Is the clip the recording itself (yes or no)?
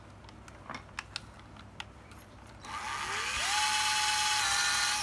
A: yes